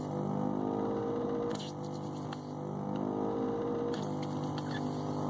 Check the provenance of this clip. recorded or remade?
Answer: recorded